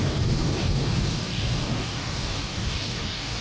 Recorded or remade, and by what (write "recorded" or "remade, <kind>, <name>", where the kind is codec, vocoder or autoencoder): remade, codec, DAC